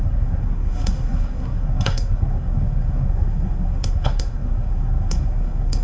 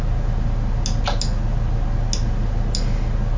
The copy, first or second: first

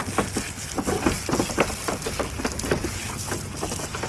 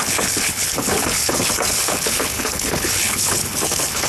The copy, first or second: second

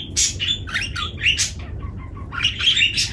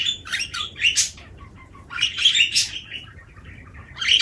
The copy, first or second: second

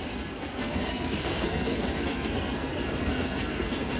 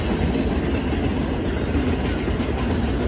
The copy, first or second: first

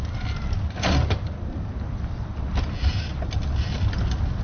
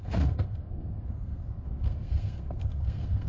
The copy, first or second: second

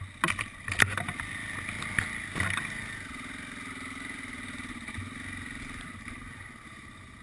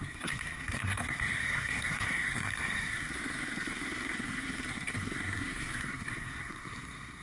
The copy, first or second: second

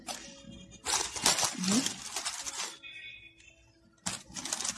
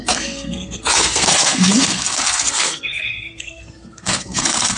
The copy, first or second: second